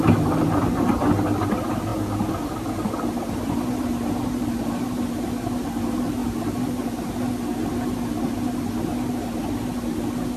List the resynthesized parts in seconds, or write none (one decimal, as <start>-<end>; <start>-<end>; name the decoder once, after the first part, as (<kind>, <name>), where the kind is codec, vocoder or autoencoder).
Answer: none